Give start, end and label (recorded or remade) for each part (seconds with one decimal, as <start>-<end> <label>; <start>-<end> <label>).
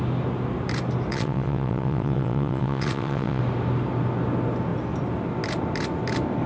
0.0-1.1 recorded; 1.1-3.4 remade; 3.4-6.5 recorded